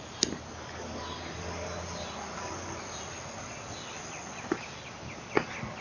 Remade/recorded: recorded